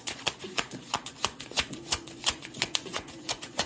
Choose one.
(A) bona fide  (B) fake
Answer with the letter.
B